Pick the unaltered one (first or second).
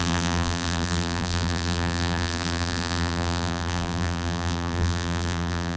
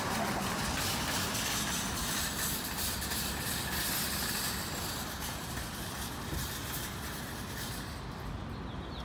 second